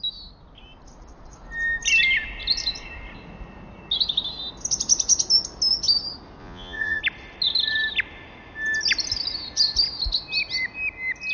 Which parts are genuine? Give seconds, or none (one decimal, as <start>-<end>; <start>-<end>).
0.0-6.4; 7.0-11.3